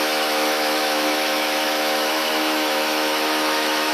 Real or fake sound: fake